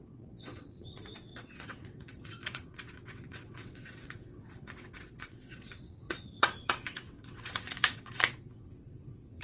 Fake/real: fake